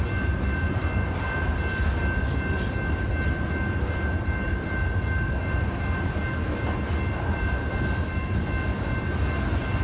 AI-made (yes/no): no